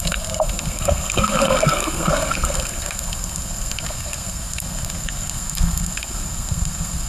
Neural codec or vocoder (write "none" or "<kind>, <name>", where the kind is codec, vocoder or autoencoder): codec, SNAC